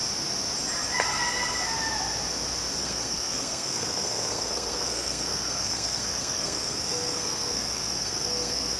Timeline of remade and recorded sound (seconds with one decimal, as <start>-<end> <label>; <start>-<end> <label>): 0.0-2.8 recorded; 2.8-8.8 remade